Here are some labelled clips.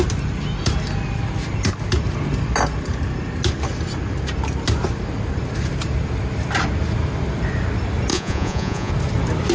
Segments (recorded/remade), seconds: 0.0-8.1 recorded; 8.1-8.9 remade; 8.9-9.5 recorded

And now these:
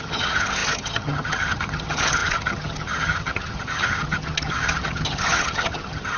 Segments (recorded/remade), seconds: 0.0-6.2 remade

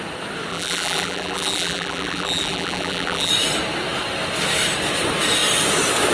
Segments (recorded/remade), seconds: 0.0-0.5 recorded; 0.5-3.3 remade; 3.3-6.1 recorded

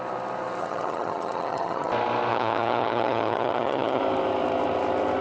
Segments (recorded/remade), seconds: 0.0-0.6 recorded; 0.6-1.9 remade; 1.9-2.3 recorded; 2.3-4.0 remade; 4.0-5.2 recorded

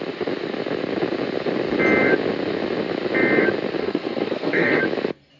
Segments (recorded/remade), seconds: 0.0-3.8 recorded; 3.8-4.8 remade; 4.8-5.4 recorded

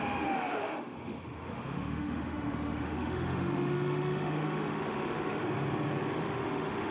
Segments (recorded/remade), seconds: 0.0-5.4 remade; 5.4-6.1 recorded; 6.1-6.9 remade

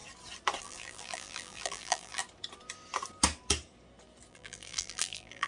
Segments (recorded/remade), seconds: 0.0-0.6 recorded; 0.6-2.2 remade; 2.2-4.3 recorded; 4.3-5.5 remade

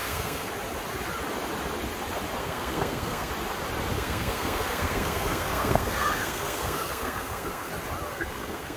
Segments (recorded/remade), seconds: 0.0-0.5 remade; 0.5-2.4 recorded; 2.4-3.3 remade; 3.3-3.9 recorded; 3.9-7.7 remade; 7.7-8.1 recorded; 8.1-8.8 remade